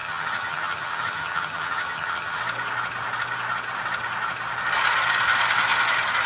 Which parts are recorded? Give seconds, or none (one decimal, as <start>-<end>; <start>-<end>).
2.4-6.3